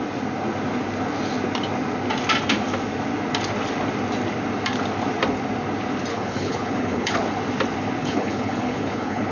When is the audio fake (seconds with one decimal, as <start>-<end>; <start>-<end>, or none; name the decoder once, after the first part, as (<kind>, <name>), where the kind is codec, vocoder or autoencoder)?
6.1-7.1 (codec, HILCodec); 8.0-9.3